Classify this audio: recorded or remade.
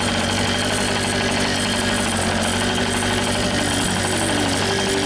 recorded